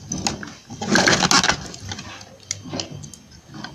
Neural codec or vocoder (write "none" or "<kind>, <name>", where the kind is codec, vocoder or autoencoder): none